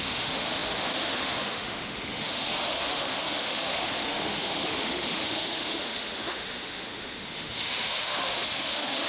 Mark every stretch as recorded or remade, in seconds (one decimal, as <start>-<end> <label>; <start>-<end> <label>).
0.0-9.1 remade